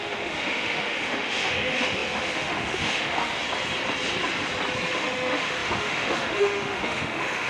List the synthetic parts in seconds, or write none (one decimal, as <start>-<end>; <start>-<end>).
0.0-3.4; 4.9-7.5